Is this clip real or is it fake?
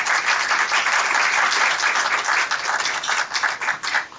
real